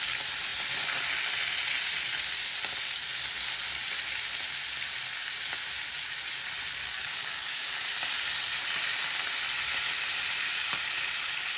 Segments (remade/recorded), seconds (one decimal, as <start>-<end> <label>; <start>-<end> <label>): 0.0-6.8 recorded; 6.8-7.7 remade; 7.7-11.6 recorded